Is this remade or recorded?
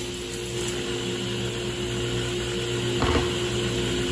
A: recorded